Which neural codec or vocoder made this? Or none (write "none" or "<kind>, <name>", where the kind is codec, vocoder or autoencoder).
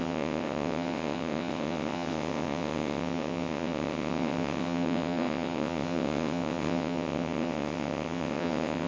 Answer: vocoder, WaveNeXt